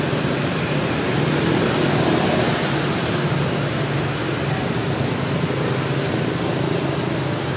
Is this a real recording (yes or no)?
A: yes